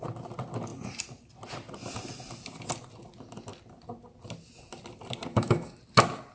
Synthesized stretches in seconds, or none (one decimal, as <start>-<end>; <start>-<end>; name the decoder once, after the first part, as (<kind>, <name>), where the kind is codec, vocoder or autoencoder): 5.3-5.8 (autoencoder, DAC-VAE)